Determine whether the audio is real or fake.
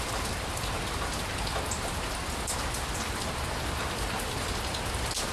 real